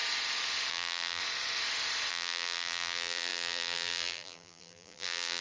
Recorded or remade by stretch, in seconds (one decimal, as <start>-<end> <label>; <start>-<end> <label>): 0.0-0.7 recorded; 0.7-1.2 remade; 1.2-2.1 recorded; 2.1-5.4 remade